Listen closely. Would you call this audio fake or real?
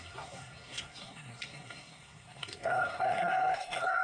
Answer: fake